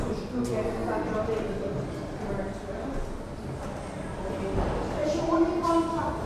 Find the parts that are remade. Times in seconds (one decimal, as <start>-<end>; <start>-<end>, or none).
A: 5.0-5.5